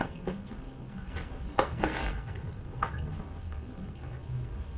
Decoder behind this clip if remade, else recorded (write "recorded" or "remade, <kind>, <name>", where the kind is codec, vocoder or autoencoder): remade, codec, SNAC